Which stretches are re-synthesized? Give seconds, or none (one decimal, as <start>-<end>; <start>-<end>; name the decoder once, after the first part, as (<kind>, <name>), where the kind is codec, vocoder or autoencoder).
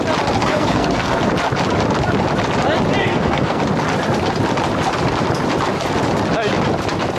0.4-1.2 (codec, SNAC); 3.0-3.6